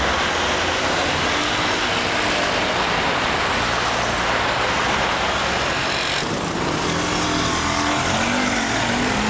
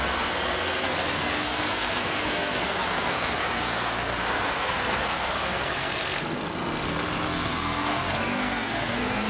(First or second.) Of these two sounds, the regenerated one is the second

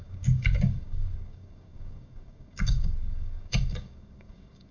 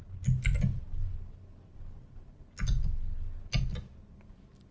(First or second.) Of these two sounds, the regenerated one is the first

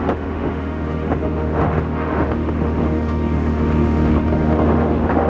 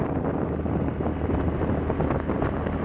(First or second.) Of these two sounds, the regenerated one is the first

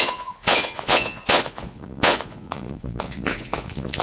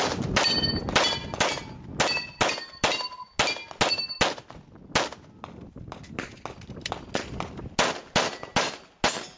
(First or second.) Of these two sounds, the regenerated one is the first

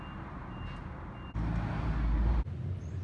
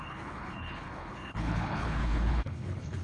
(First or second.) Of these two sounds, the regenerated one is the second